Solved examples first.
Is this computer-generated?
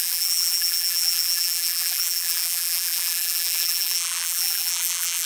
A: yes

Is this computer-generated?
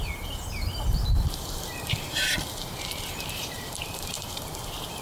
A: yes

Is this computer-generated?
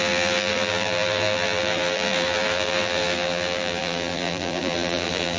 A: yes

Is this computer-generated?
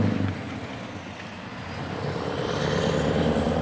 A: yes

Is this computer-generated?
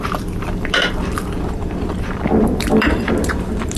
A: yes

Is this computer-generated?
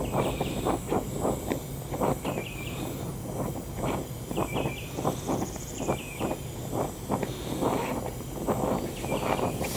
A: no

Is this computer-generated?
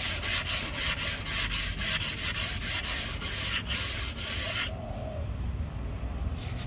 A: no